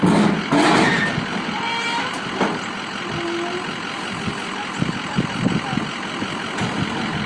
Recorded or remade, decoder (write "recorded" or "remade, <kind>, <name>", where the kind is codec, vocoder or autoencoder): recorded